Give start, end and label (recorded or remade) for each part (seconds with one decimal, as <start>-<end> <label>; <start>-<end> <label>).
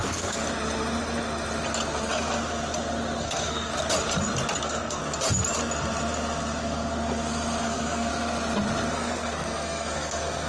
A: 0.0-0.4 remade; 0.4-3.2 recorded; 3.2-3.7 remade; 3.7-4.6 recorded; 4.6-5.0 remade; 5.0-7.6 recorded; 7.6-8.1 remade; 8.1-8.9 recorded; 8.9-10.5 remade